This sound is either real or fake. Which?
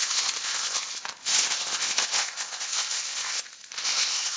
fake